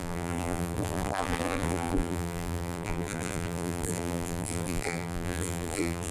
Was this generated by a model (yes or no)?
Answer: yes